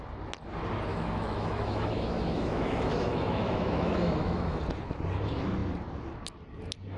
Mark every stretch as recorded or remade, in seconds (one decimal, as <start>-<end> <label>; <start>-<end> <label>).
0.0-0.9 recorded; 0.9-4.6 remade; 4.6-7.0 recorded